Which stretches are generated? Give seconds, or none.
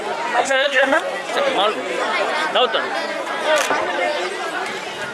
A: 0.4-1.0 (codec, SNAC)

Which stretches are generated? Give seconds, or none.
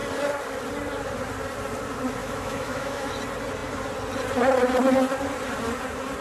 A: 2.2-3.1 (autoencoder, DAC-VAE)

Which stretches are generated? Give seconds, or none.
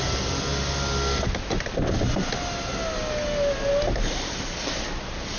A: none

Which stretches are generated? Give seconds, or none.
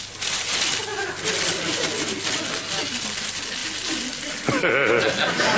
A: none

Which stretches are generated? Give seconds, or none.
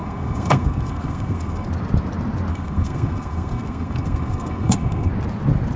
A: 0.0-1.7 (codec, SNAC); 2.5-5.1